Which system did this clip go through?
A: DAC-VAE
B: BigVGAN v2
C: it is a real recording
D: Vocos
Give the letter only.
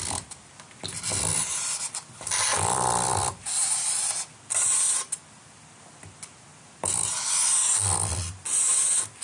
C